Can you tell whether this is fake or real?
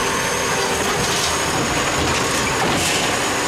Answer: real